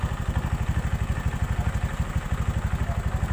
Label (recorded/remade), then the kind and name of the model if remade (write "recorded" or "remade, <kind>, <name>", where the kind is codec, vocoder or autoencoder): recorded